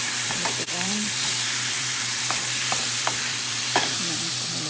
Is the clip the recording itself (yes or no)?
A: no